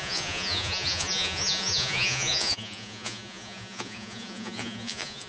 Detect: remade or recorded remade